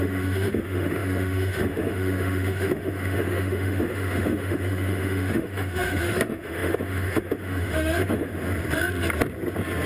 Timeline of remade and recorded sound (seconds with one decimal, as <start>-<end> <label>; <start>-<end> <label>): 0.0-8.3 remade; 8.3-9.9 recorded